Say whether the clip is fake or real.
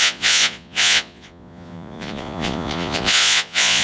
fake